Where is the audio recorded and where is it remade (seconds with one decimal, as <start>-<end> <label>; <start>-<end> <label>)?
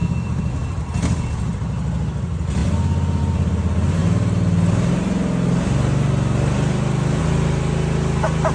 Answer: 0.0-0.5 remade; 0.5-8.5 recorded